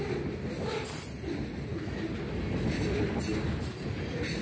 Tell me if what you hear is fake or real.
real